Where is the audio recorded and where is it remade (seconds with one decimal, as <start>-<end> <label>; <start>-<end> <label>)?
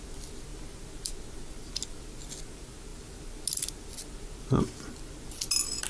0.0-5.9 recorded